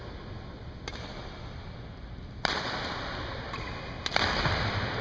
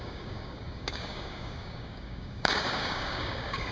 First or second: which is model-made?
second